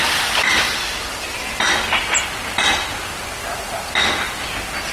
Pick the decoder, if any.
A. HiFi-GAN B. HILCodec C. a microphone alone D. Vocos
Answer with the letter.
C